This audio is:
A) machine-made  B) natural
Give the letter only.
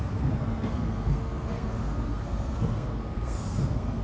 A